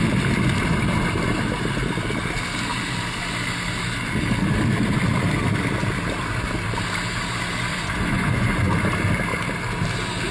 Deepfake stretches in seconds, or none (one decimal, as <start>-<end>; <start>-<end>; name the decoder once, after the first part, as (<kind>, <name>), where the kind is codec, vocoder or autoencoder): 7.7-8.7 (vocoder, Vocos)